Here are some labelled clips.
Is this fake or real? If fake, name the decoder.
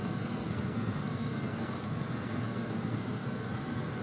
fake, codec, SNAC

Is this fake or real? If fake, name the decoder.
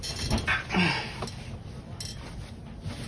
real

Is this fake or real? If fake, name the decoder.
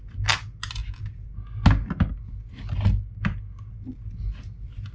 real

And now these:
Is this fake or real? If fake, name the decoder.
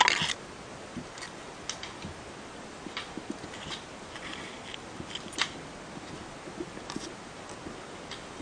real